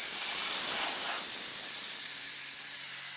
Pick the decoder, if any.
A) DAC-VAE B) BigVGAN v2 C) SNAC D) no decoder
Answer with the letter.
D